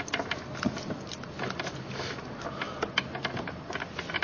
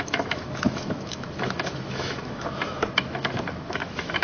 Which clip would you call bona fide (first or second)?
first